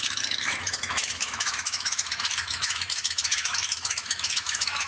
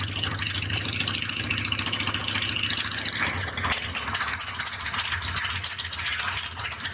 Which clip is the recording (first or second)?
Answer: second